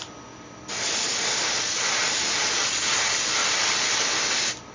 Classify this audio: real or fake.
real